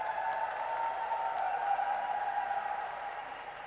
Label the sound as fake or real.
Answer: real